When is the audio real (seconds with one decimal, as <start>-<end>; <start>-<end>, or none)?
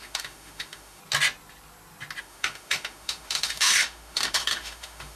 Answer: 1.0-2.2